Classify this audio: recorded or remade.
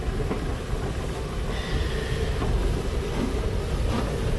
recorded